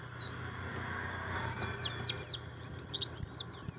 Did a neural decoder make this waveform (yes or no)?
no